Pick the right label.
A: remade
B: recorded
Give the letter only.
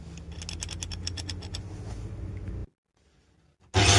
B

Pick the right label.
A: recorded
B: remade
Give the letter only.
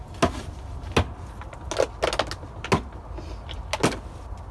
A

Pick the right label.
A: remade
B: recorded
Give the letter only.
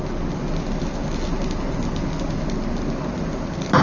B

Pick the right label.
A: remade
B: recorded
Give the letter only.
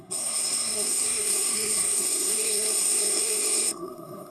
A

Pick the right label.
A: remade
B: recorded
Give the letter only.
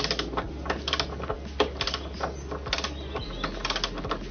B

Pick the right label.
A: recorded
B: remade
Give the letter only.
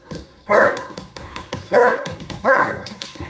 B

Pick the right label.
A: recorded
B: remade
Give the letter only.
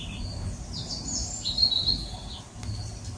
A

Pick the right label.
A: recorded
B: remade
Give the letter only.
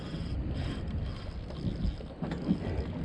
A